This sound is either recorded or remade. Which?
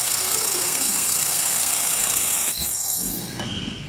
remade